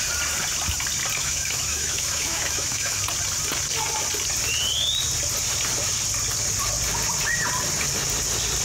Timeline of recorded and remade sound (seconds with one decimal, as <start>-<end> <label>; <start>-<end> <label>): 0.0-1.2 recorded; 1.2-3.0 remade; 3.0-8.6 recorded